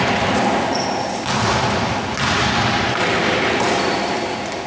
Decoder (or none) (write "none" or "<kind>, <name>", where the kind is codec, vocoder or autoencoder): none